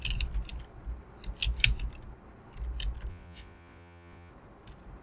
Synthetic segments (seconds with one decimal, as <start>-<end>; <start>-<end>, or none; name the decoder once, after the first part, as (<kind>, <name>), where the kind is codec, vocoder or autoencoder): 3.1-4.3 (vocoder, Vocos)